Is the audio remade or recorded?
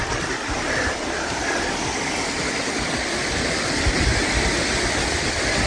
recorded